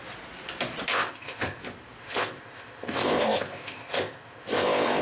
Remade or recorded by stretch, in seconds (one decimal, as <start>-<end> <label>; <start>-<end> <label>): 0.0-0.9 recorded; 0.9-1.6 remade; 1.6-2.0 recorded; 2.0-5.0 remade